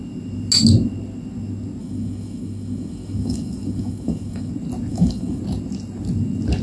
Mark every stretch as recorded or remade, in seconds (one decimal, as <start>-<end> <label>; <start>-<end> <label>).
0.0-1.8 recorded; 1.8-4.5 remade; 4.5-4.9 recorded; 4.9-5.4 remade; 5.4-6.6 recorded

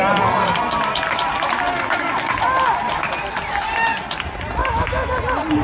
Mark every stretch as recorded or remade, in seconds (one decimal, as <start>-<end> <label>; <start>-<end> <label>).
0.0-4.6 recorded; 4.6-5.1 remade; 5.1-5.6 recorded

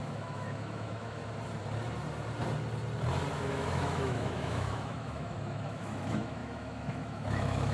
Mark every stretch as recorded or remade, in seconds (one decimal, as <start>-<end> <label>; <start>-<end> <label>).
0.0-1.2 remade; 1.2-3.3 recorded; 3.3-7.7 remade